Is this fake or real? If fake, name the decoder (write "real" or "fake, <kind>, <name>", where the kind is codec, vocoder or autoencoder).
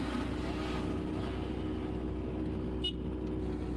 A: real